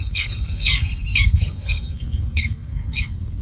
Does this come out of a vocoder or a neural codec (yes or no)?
yes